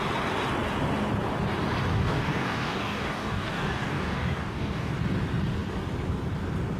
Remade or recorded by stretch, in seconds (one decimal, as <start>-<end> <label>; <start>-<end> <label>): 0.0-1.9 recorded; 1.9-4.9 remade; 4.9-6.8 recorded